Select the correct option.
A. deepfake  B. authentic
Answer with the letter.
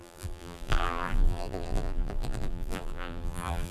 A